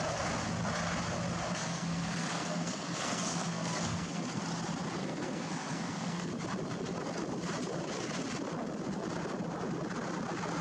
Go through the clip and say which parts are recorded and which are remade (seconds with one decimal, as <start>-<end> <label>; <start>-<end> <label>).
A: 0.0-1.6 recorded; 1.6-4.4 remade; 4.4-5.0 recorded; 5.0-6.3 remade; 6.3-10.6 recorded